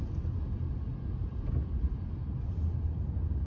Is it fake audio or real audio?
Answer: real